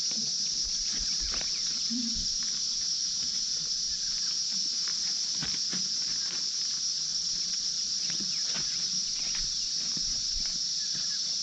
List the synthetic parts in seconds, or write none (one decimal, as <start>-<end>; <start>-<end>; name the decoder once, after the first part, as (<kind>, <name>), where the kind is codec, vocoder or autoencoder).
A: 1.6-2.3 (vocoder, WaveNeXt); 7.1-8.5